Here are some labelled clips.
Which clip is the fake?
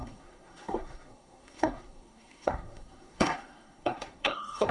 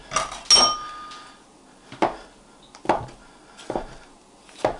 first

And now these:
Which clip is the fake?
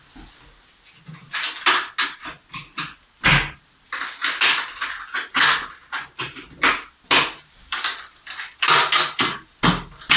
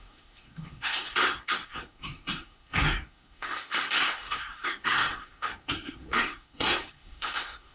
second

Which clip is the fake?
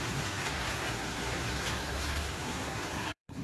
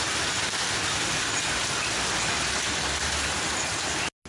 first